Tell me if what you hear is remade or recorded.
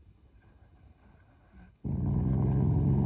remade